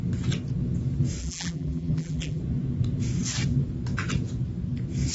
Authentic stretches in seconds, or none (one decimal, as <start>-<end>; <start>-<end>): 0.0-1.2; 2.4-5.1